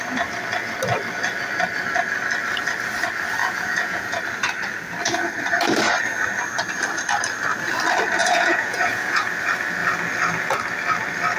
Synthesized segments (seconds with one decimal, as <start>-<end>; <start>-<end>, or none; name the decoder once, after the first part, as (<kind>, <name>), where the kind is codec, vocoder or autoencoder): 3.4-4.2 (vocoder, Vocos); 8.2-9.3